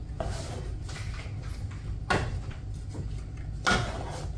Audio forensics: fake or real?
real